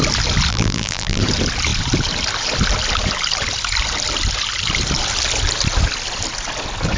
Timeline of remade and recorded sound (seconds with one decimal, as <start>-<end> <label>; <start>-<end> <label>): 0.0-0.5 recorded; 0.5-1.2 remade; 1.2-7.0 recorded